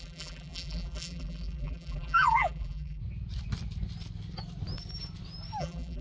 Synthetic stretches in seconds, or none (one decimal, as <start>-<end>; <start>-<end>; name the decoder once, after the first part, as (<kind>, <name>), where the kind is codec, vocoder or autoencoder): 0.0-3.0 (vocoder, BigVGAN v2); 5.6-6.0